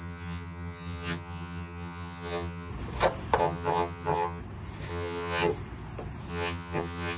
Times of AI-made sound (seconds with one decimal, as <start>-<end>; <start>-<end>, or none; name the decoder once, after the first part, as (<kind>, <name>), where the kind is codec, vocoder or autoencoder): 0.0-2.7 (vocoder, HiFi-GAN); 3.4-4.4; 4.9-5.5; 6.3-7.2